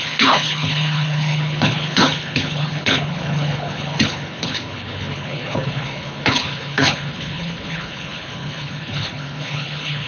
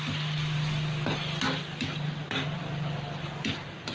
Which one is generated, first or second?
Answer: first